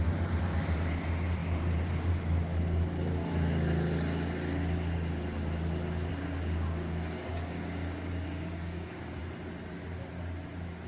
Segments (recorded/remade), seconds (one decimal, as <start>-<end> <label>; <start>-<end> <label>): 0.0-6.1 recorded; 6.1-9.2 remade; 9.2-10.9 recorded